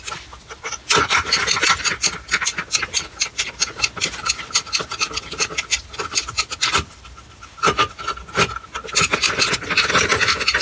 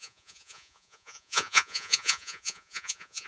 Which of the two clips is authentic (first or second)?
first